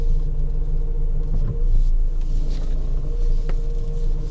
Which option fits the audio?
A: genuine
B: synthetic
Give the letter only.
A